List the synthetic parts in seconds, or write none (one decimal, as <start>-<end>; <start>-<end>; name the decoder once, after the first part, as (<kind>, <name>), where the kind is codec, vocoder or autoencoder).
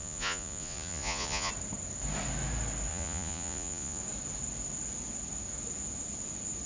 0.0-1.5 (vocoder, Vocos); 2.9-4.0